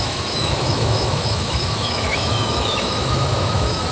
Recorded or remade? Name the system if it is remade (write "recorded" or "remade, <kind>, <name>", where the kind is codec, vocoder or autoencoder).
remade, autoencoder, DAC-VAE